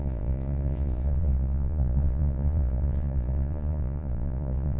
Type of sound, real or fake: fake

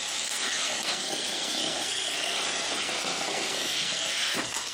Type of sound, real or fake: fake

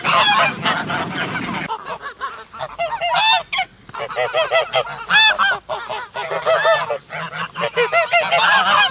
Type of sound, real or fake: real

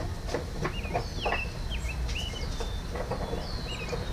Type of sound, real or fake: real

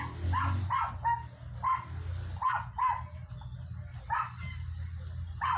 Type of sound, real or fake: real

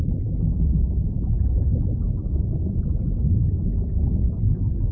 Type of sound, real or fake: real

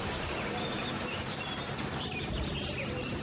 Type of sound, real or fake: fake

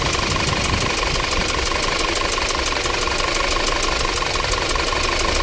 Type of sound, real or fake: real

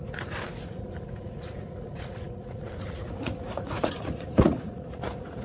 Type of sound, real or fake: fake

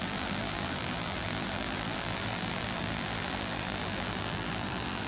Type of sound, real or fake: fake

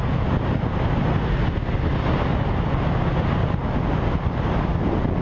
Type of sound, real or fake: real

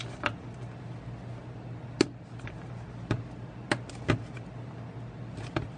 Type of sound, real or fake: real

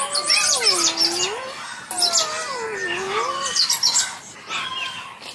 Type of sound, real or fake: real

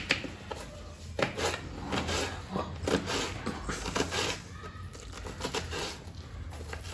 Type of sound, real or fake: real